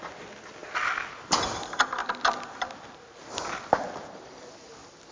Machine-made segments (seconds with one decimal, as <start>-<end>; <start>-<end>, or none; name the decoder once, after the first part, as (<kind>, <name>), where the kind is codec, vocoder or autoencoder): none